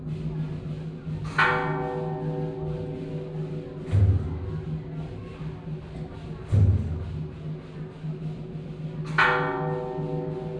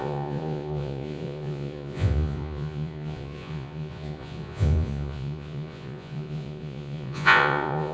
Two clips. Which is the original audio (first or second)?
first